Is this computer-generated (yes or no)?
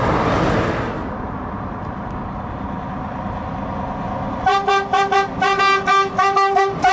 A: no